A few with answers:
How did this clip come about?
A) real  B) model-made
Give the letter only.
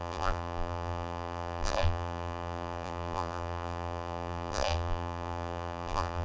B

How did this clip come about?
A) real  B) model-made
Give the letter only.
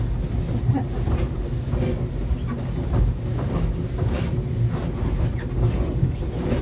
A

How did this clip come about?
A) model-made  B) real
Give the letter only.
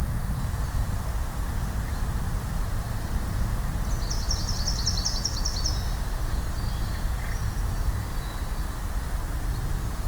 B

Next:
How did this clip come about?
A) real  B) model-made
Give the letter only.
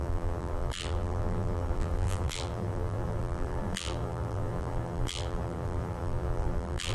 B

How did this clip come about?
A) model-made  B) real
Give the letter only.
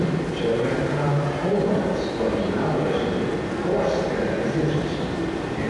A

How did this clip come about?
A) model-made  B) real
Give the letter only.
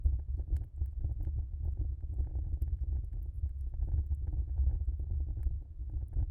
B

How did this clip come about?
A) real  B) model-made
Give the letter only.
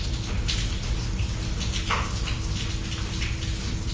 A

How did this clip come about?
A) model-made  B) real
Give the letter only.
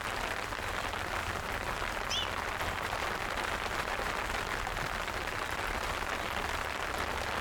B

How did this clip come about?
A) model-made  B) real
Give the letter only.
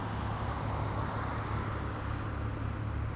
B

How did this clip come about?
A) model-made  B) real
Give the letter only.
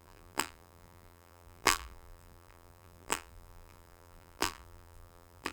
A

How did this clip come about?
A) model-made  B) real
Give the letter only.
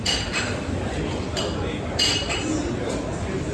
A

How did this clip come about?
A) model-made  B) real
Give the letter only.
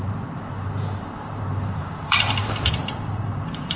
A